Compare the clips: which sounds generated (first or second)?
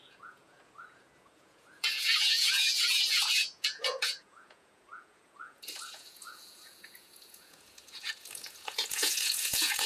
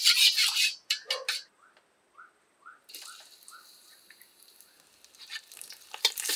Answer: first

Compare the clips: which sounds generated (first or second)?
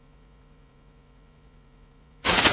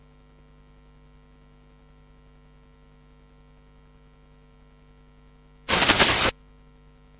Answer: first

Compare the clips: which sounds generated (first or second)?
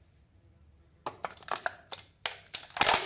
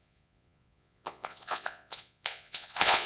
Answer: second